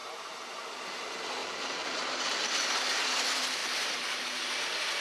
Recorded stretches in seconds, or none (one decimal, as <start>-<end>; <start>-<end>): 0.5-1.4; 2.5-3.6; 4.6-5.0